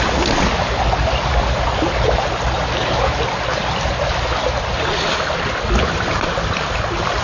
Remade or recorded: recorded